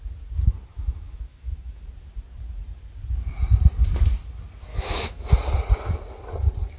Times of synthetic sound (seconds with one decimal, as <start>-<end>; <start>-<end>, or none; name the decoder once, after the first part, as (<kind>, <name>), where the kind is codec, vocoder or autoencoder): 0.7-1.8 (autoencoder, DAC-VAE); 4.7-5.3